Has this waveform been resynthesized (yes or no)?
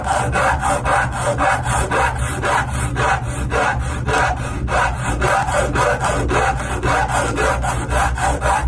no